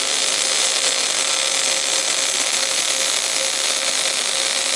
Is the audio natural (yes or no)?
yes